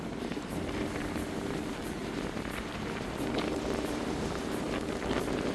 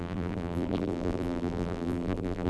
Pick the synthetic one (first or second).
second